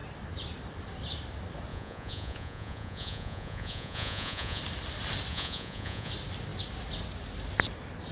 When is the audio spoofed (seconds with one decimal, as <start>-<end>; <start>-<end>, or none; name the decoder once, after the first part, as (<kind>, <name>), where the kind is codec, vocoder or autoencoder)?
1.7-4.6 (vocoder, Vocos); 5.3-6.1